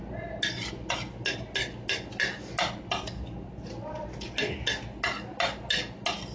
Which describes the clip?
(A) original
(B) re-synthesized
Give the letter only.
A